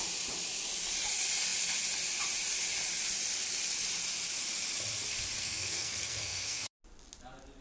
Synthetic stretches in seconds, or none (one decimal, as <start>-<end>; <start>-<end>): 5.4-6.7